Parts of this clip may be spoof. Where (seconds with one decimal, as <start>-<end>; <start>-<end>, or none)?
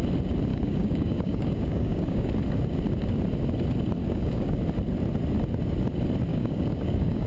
0.5-2.3; 4.0-4.6; 6.3-7.3